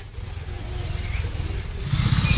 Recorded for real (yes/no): yes